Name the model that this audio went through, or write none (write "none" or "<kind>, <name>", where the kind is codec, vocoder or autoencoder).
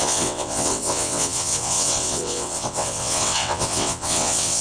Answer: vocoder, WaveNeXt